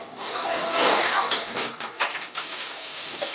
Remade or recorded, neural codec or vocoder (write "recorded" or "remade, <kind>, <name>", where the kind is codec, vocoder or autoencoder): remade, codec, DAC